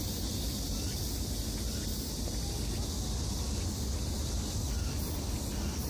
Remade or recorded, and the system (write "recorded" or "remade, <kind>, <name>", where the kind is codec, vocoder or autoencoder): recorded